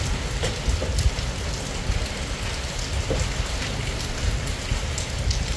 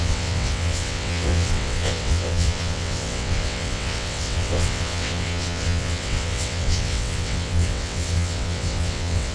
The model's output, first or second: second